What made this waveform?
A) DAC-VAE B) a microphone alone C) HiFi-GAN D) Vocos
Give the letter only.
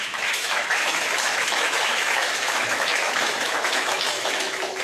A